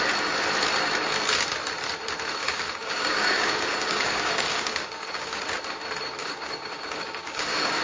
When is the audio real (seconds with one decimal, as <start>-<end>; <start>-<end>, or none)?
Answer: 0.0-2.4; 5.4-6.2